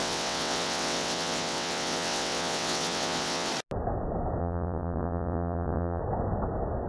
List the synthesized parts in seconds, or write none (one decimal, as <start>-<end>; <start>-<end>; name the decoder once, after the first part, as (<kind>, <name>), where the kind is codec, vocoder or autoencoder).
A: 0.0-3.5 (vocoder, WaveNeXt); 4.4-6.0